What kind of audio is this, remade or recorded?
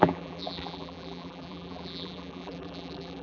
remade